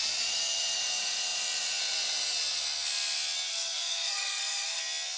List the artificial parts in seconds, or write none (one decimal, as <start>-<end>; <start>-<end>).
3.5-4.8